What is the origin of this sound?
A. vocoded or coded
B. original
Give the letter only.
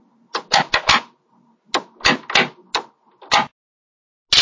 B